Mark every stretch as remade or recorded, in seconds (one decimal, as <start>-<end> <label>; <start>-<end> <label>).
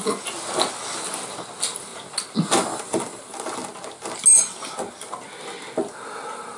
0.0-1.9 remade; 1.9-2.8 recorded; 2.8-3.6 remade; 3.6-5.9 recorded; 5.9-6.6 remade